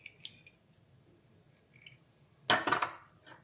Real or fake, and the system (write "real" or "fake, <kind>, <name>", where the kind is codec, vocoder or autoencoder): real